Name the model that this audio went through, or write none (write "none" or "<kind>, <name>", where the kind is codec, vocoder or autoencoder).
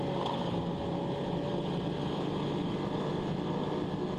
none